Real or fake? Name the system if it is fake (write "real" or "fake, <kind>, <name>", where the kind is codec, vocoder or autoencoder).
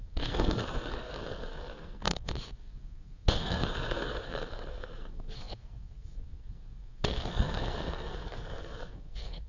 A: fake, codec, SNAC